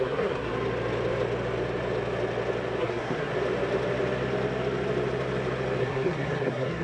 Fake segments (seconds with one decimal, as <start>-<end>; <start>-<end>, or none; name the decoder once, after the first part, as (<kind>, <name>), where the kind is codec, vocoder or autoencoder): 0.0-0.5 (codec, SNAC); 2.8-3.3; 5.8-6.8